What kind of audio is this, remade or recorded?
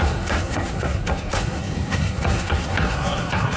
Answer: remade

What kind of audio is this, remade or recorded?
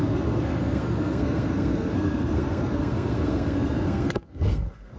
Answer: remade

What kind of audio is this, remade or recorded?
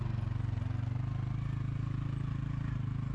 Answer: recorded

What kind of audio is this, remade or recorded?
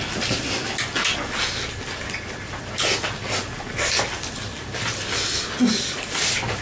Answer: recorded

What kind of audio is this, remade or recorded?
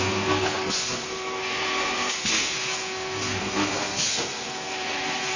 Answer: remade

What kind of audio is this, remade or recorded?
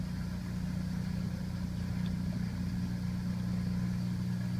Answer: recorded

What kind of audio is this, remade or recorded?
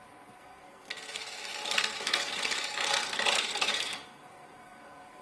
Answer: remade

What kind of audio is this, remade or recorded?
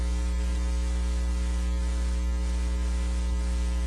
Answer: recorded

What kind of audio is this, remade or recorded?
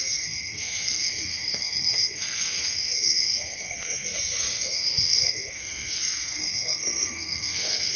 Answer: remade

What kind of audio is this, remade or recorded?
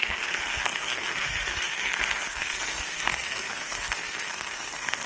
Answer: remade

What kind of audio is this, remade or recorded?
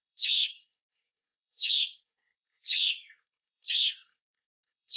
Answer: remade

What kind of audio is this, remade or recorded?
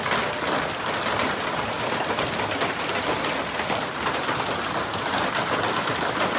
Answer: recorded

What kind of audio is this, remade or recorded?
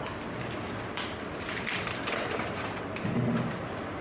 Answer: recorded